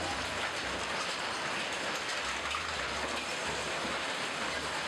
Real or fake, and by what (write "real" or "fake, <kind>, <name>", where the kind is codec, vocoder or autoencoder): real